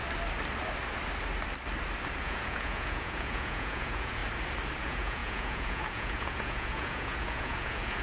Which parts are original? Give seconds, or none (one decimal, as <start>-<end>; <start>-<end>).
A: 0.0-2.2; 4.2-4.8